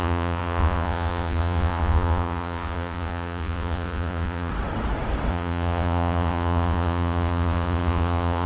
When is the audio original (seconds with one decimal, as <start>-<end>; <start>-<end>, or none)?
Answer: 4.5-5.3